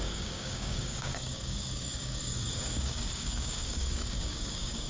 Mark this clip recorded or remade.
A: remade